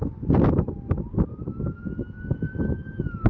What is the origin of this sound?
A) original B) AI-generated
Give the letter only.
A